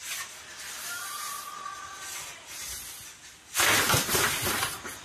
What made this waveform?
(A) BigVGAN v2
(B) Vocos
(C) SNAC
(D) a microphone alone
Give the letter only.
D